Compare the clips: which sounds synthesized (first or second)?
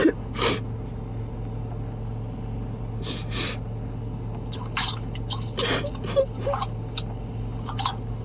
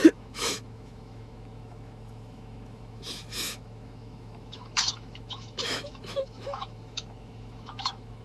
second